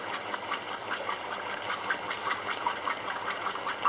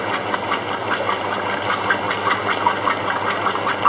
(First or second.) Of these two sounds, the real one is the second